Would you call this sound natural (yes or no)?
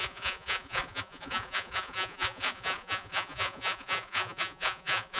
no